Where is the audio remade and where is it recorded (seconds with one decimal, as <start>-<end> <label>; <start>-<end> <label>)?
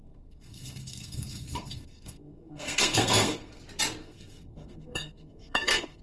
0.0-3.6 remade; 3.6-4.0 recorded; 4.0-6.0 remade